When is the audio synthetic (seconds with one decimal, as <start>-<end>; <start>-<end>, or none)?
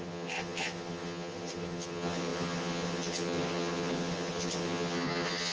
0.0-5.5